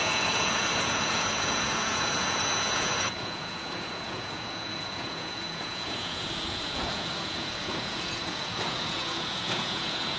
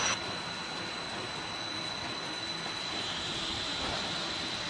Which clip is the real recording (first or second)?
second